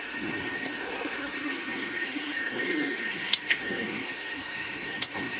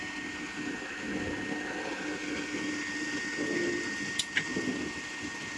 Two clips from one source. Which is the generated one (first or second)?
first